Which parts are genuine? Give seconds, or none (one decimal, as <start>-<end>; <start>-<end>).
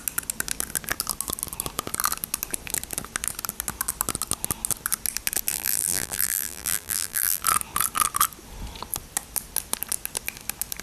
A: 0.0-5.5; 7.4-10.8